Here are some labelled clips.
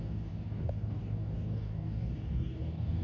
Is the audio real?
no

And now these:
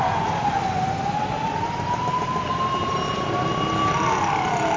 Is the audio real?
yes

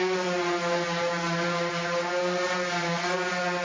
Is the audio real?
yes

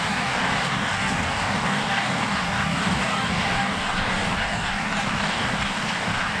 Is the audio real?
no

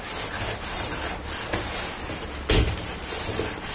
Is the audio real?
yes